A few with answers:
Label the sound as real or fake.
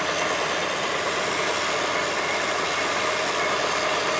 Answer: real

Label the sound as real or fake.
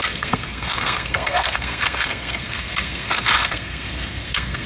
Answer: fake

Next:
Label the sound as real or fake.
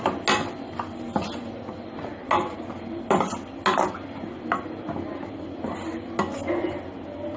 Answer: real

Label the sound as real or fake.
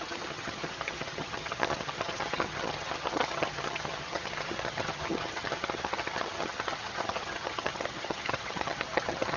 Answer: fake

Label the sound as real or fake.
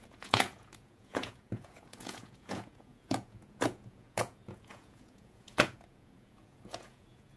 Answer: fake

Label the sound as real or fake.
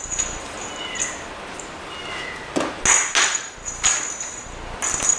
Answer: real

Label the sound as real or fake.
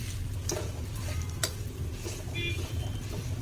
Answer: real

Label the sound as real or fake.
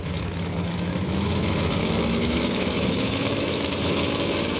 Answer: fake